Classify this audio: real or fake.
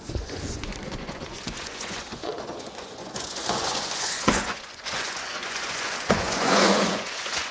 fake